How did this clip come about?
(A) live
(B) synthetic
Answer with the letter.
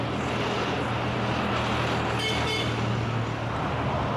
A